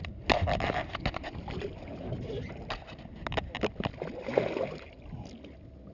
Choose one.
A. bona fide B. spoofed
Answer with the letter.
A